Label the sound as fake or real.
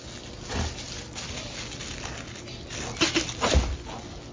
real